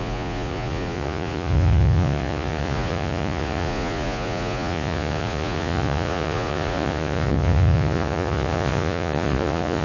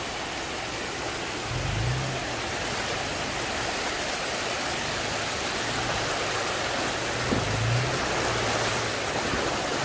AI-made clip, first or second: first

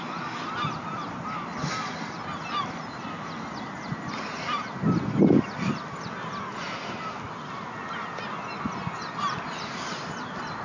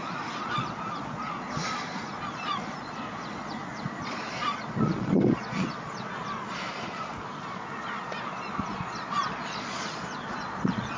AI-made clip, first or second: second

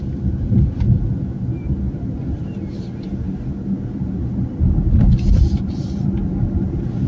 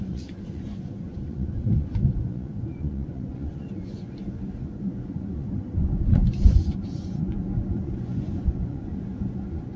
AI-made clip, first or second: second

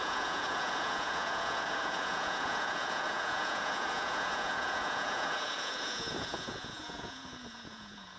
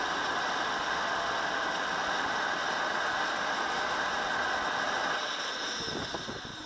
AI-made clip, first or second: first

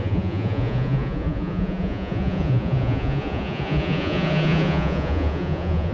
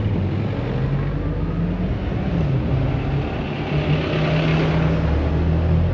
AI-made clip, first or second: first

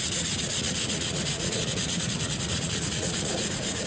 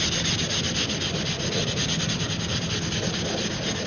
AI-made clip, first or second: first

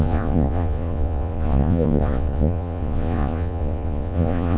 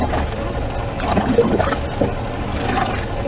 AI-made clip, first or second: first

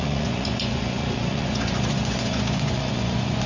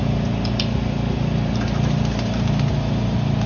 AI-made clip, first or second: first